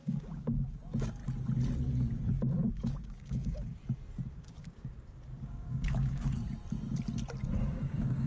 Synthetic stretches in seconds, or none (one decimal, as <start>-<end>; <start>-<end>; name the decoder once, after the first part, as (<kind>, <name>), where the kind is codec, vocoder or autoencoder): 0.0-1.2 (codec, DAC); 2.7-3.8; 4.3-6.4; 7.6-8.3